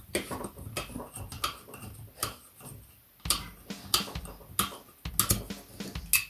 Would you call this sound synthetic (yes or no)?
no